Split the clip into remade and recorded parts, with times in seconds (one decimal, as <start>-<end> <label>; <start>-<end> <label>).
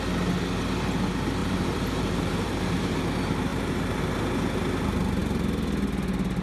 0.0-1.4 recorded; 1.4-3.0 remade; 3.0-3.5 recorded; 3.5-4.0 remade; 4.0-6.4 recorded